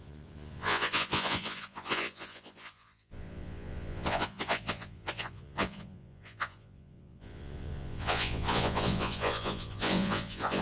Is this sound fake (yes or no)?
yes